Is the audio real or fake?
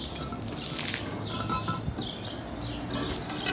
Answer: real